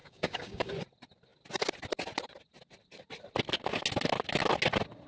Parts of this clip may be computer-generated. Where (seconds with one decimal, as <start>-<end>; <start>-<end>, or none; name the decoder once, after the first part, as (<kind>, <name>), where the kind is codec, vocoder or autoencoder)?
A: 0.0-0.7 (codec, DAC)